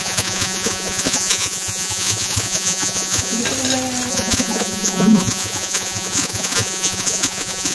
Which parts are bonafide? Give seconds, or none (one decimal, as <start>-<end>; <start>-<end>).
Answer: 3.4-4.1